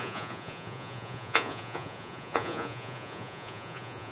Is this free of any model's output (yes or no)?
no